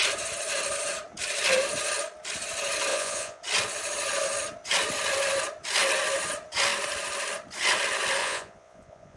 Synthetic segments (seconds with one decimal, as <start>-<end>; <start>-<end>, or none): 2.9-3.4; 8.2-9.2